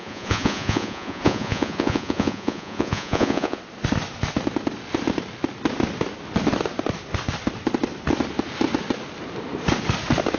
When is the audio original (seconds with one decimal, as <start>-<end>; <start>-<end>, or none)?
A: 3.6-10.4